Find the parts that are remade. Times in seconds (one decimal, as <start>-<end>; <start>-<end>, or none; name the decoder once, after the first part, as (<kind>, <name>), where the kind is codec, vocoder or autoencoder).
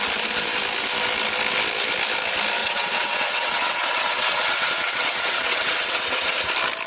2.6-6.5 (vocoder, WaveNeXt)